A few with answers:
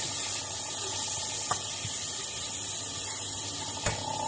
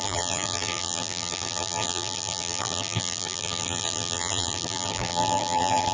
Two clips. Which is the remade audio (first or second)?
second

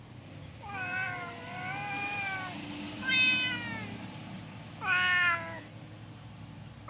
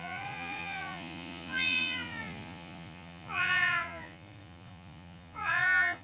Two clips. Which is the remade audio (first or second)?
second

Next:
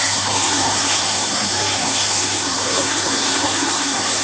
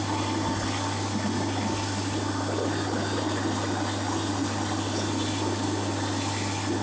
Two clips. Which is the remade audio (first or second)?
first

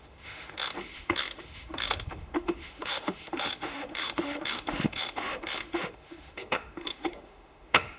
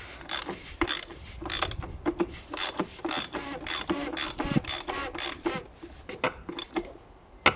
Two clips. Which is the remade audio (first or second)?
first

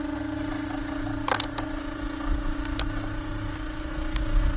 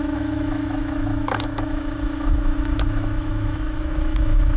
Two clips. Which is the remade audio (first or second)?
second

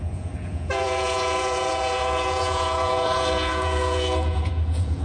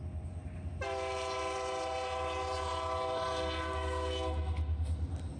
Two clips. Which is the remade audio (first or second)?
first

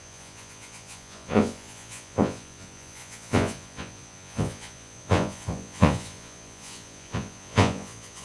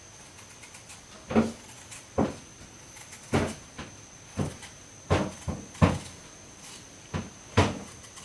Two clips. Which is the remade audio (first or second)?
first